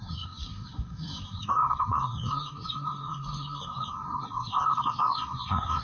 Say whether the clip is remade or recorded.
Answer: remade